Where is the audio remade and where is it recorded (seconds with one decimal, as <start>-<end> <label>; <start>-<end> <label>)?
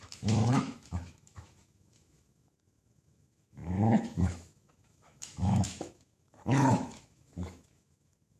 0.0-8.4 remade